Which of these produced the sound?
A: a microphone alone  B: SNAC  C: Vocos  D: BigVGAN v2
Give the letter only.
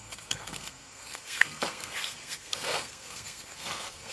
B